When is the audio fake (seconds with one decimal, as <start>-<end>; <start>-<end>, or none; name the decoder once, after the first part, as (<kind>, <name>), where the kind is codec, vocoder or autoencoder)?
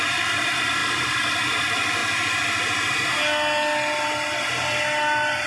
0.0-0.8 (vocoder, BigVGAN v2); 1.3-2.0